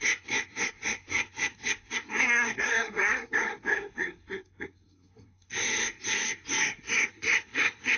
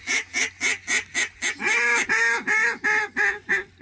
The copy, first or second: first